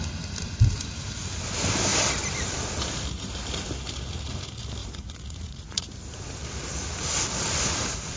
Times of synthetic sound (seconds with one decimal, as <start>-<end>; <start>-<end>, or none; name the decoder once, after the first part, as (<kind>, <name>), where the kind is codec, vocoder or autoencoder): 4.8-5.9 (vocoder, Vocos)

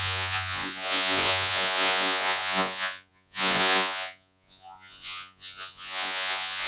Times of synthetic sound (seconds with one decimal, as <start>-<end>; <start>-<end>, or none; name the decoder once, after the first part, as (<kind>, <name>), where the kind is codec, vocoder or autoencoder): 0.0-6.7 (vocoder, Vocos)

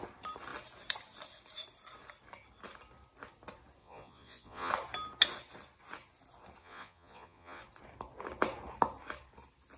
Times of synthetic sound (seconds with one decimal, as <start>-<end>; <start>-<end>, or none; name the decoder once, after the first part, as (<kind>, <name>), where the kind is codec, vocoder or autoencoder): 3.8-4.7 (vocoder, Vocos); 6.6-7.6

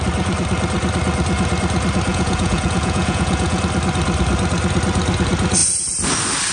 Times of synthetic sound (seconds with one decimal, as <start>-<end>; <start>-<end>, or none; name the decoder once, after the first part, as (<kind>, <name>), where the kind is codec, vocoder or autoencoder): 2.1-3.6 (vocoder, Vocos)

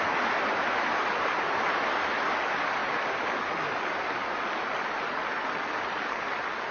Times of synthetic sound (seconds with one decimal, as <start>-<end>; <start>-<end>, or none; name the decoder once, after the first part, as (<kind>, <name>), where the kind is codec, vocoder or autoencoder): none

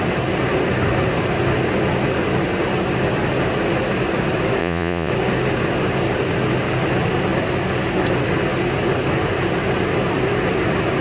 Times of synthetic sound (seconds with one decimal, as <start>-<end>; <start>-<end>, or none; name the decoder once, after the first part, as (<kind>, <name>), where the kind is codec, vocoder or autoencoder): 4.6-5.1 (vocoder, Vocos)

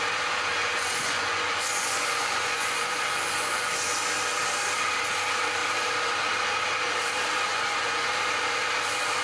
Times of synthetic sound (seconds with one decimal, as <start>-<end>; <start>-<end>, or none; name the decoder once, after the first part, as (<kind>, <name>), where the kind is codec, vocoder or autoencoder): 0.6-3.9 (vocoder, Vocos); 7.5-8.1